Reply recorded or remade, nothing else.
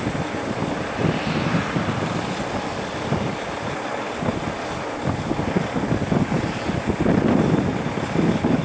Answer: recorded